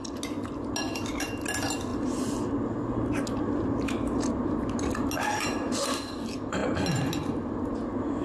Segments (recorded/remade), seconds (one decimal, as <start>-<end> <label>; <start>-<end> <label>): 0.0-8.2 recorded